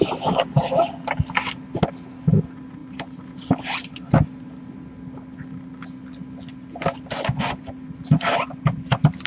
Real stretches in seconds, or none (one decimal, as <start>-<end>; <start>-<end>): 0.0-9.3